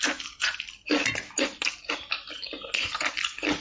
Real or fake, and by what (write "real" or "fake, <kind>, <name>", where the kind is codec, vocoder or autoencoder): real